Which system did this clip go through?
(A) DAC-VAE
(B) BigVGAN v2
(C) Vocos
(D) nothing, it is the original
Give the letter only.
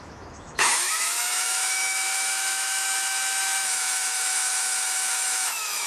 A